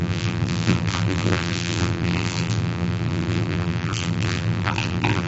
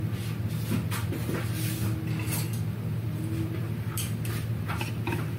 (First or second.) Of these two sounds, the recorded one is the second